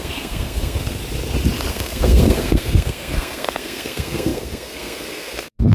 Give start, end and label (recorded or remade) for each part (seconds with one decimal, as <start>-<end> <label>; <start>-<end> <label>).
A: 0.0-1.0 remade; 1.0-1.7 recorded; 1.7-5.7 remade